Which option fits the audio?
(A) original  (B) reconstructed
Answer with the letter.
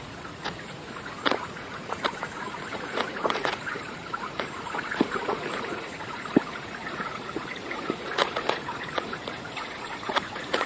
B